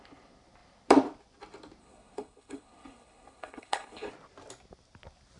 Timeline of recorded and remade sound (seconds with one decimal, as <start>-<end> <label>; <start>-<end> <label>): 0.0-1.8 recorded; 1.8-4.1 remade; 4.1-5.4 recorded